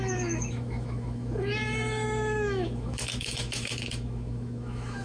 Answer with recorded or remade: remade